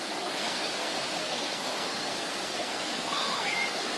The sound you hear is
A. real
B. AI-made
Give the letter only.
B